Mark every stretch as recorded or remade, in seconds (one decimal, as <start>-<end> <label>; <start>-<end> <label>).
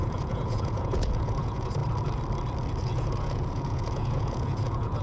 0.0-1.8 remade; 1.8-2.8 recorded; 2.8-5.0 remade